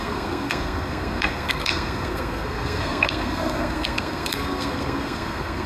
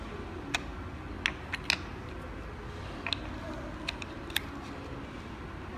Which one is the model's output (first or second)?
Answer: first